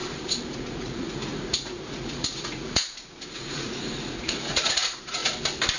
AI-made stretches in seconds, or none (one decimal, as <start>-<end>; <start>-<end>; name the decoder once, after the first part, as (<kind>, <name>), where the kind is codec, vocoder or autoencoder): 0.5-5.2 (vocoder, Vocos)